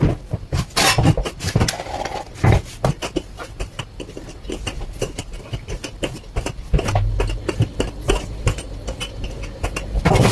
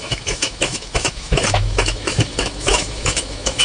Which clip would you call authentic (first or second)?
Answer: first